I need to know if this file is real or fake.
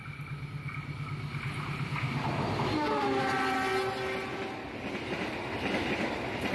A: real